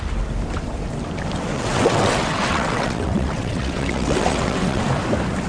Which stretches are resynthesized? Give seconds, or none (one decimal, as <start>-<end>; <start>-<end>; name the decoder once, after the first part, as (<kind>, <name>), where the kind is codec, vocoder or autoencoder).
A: 1.5-4.8 (vocoder, WaveNeXt)